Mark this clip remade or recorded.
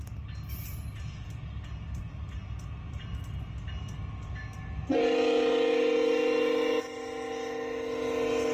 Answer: recorded